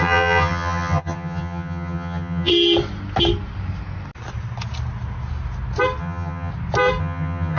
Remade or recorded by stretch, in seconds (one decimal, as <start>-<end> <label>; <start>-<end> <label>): 0.0-2.5 remade; 2.5-6.0 recorded; 6.0-6.5 remade; 6.5-7.0 recorded; 7.0-7.6 remade